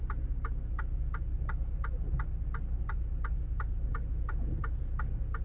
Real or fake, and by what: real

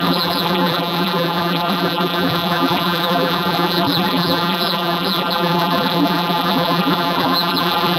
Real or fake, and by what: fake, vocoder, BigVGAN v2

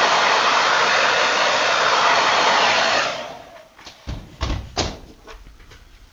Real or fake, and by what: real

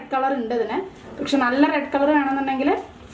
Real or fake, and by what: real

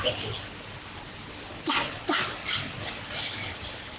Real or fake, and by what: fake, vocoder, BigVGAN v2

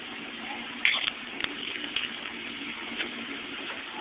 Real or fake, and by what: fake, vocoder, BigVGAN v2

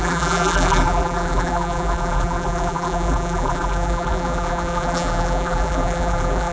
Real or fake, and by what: fake, vocoder, BigVGAN v2